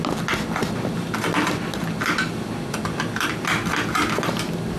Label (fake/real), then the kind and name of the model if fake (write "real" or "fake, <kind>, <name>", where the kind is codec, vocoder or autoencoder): real